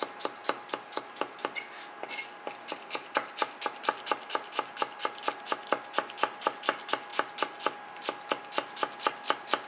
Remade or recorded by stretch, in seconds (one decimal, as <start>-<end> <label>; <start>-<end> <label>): 0.0-9.7 recorded